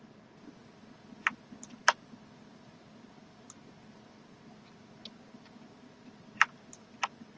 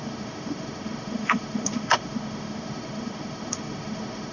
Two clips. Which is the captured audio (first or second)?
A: first